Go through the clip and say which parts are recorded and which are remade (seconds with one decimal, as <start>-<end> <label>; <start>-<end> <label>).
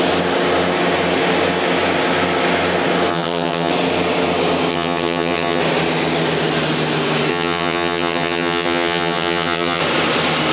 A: 0.0-3.1 recorded; 3.1-3.7 remade; 3.7-4.7 recorded; 4.7-5.6 remade; 5.6-7.3 recorded; 7.3-9.8 remade; 9.8-10.5 recorded